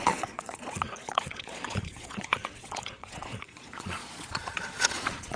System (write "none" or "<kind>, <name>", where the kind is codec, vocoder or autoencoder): vocoder, Vocos